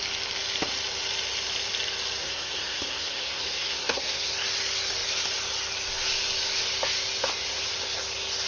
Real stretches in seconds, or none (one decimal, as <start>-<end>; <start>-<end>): 0.0-2.2; 4.3-8.5